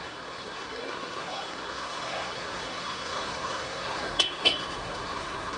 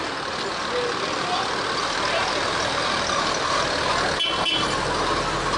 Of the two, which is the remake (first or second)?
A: first